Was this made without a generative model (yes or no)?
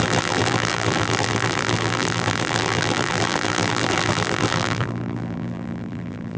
no